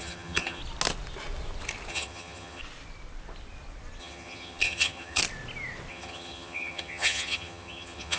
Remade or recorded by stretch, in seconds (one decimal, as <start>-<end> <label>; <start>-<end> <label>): 0.0-0.6 remade; 0.6-1.9 recorded; 1.9-2.6 remade; 2.6-4.0 recorded; 4.0-5.2 remade; 5.2-5.9 recorded; 5.9-8.2 remade